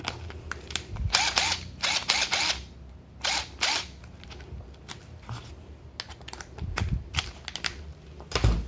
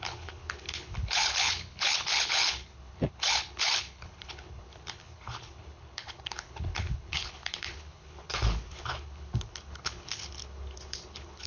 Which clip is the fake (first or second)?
second